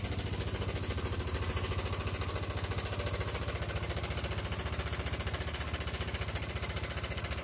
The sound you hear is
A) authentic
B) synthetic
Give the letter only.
A